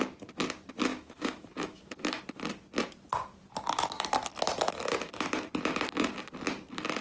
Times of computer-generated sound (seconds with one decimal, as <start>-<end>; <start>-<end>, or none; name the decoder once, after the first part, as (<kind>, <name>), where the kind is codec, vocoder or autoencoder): 0.9-2.2 (autoencoder, DAC-VAE)